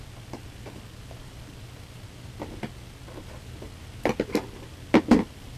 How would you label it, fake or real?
real